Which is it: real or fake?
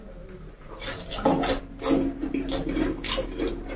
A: real